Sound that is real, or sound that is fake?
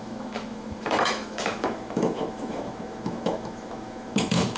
fake